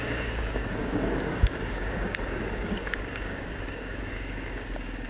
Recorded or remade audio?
remade